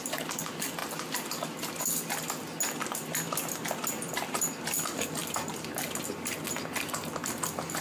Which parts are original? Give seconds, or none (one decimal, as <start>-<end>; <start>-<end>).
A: 0.0-7.8